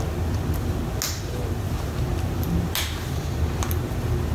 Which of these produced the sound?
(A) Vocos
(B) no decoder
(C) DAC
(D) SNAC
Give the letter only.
B